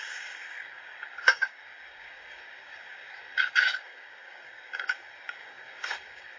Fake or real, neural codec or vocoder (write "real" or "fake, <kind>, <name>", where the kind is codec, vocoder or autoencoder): fake, codec, DAC